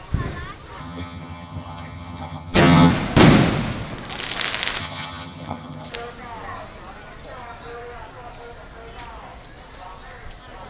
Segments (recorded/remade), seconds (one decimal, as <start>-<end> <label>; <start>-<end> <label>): 0.0-0.8 recorded; 0.8-2.9 remade; 2.9-4.8 recorded; 4.8-5.9 remade; 5.9-10.7 recorded